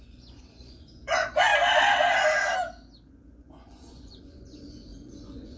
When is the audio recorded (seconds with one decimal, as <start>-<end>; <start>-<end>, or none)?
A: 1.5-3.1

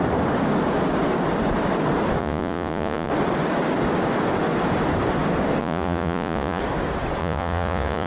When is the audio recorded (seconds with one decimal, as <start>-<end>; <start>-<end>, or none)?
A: 0.0-2.2; 3.1-5.6; 6.6-7.2